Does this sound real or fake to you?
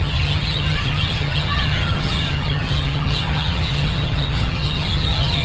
fake